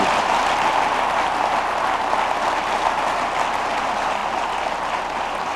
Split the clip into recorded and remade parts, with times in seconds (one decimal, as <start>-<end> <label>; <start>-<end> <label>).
0.0-0.4 remade; 0.4-3.8 recorded; 3.8-4.2 remade; 4.2-5.0 recorded; 5.0-5.6 remade